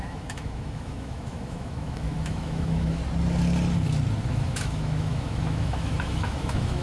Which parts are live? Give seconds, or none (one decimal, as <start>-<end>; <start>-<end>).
3.0-4.2